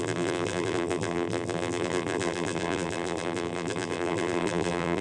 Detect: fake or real fake